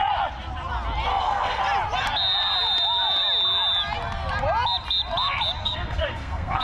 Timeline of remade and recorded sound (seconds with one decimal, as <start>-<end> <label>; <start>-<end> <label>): 0.0-1.1 recorded; 1.1-1.6 remade; 1.6-5.6 recorded; 5.6-6.6 remade